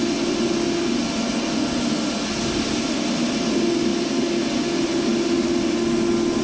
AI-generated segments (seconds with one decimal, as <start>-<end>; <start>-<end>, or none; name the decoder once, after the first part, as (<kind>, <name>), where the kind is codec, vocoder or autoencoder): none

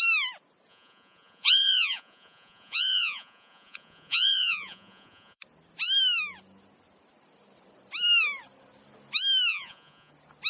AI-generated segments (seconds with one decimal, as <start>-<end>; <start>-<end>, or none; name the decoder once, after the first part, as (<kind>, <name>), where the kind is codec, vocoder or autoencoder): 0.7-5.4 (vocoder, Vocos); 9.5-10.1

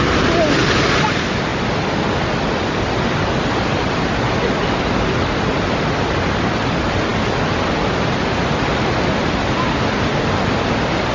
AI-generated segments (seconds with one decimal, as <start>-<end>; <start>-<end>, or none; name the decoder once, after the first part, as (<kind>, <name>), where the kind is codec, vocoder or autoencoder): none

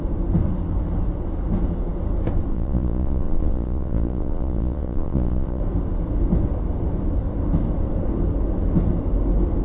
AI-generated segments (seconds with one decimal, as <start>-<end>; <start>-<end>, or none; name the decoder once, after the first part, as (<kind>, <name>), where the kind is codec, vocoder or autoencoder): 2.5-5.6 (vocoder, Vocos)

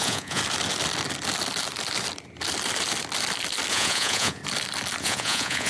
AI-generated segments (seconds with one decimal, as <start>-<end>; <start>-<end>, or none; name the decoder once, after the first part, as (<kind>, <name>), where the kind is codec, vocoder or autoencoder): 0.0-0.4 (vocoder, Vocos); 3.7-4.4; 5.0-5.7

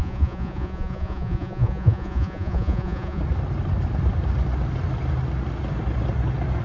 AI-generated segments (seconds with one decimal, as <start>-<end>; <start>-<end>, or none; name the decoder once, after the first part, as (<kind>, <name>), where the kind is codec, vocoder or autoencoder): 0.0-3.2 (vocoder, Vocos)

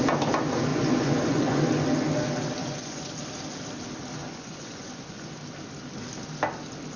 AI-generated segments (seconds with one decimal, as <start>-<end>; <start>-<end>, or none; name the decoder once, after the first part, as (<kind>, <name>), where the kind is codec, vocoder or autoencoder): 0.7-1.6 (vocoder, Vocos); 2.6-3.1; 4.2-5.3

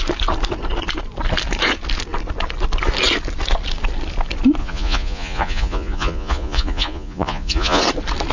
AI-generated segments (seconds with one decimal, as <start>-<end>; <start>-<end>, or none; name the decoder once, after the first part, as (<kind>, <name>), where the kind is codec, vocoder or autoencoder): 4.6-7.8 (vocoder, Vocos)